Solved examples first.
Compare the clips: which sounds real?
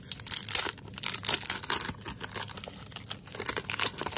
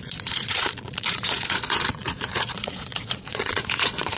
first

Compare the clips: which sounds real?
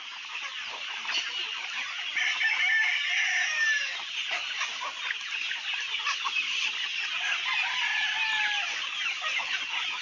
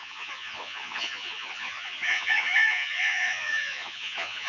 first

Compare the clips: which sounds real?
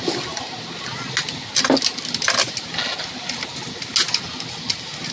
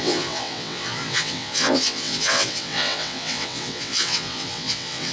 first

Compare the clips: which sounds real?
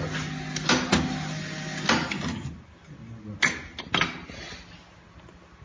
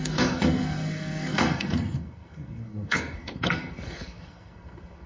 first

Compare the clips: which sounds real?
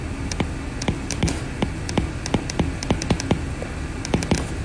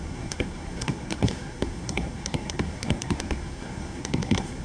first